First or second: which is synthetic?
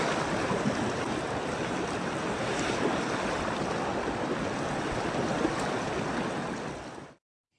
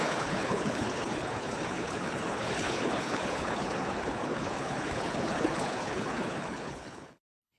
second